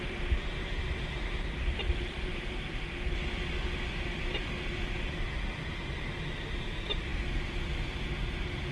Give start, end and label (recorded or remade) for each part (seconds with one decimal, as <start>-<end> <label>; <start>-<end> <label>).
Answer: 0.0-8.7 recorded